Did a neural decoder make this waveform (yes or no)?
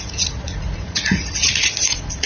yes